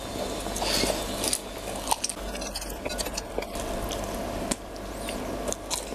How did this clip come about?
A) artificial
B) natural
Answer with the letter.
B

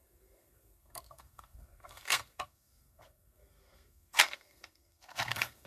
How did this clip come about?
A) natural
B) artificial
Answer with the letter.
B